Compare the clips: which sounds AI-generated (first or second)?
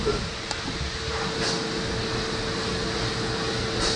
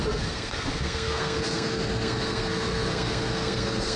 second